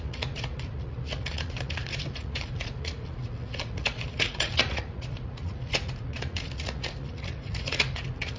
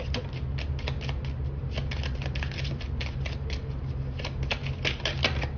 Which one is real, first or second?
second